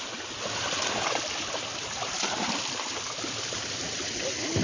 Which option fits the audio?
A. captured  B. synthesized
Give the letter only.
A